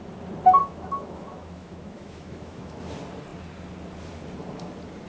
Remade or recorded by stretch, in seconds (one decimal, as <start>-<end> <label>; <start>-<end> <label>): 0.0-0.6 recorded; 0.6-2.8 remade; 2.8-5.1 recorded

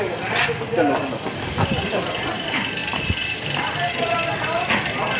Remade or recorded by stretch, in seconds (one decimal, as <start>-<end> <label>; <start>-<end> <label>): 0.0-5.2 recorded